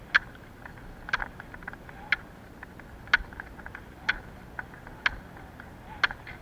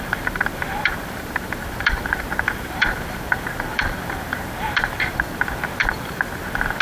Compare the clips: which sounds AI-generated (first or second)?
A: second